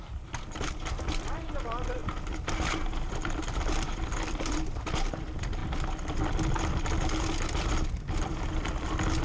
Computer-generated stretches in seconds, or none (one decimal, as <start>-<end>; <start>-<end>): 0.0-5.6; 8.2-9.2

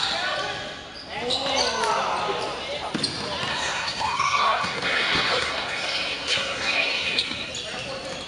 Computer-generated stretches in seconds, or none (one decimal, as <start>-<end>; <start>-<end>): 3.5-7.5

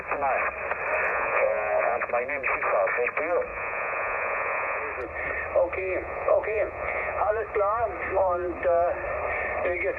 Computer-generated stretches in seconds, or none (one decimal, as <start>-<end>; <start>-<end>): 1.1-2.1; 3.5-4.8; 5.8-7.3

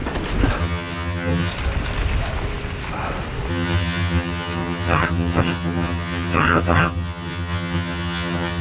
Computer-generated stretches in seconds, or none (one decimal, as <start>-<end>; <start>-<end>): 0.6-1.5; 3.5-8.6

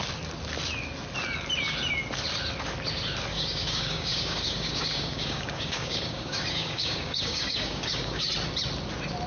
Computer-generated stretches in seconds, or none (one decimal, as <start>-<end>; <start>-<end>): 3.3-8.3

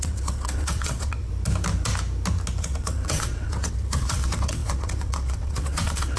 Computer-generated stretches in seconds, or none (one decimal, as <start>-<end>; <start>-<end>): 0.0-1.3; 2.6-6.2

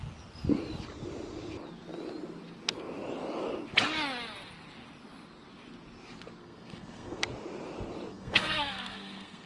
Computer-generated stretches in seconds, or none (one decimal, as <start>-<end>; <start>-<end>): 6.4-7.2; 8.1-9.5

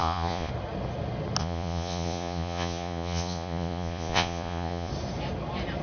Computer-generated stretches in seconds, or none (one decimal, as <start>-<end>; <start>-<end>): 0.0-0.5; 1.4-4.9